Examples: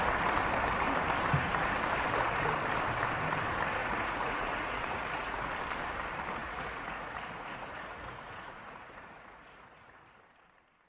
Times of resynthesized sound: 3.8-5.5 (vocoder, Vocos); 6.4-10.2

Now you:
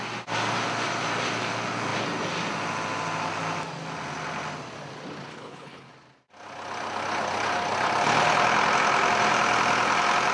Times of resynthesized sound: 5.3-5.9 (codec, HILCodec)

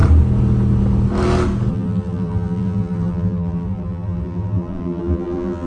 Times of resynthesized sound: 1.7-5.7 (vocoder, BigVGAN v2)

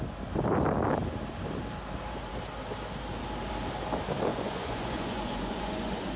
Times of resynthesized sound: 4.3-6.2 (vocoder, Vocos)

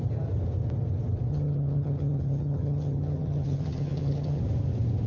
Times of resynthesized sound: 1.3-4.4 (vocoder, HiFi-GAN)

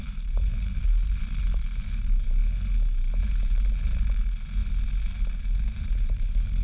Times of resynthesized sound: 0.0-2.4 (vocoder, BigVGAN v2); 3.2-4.6; 6.0-6.6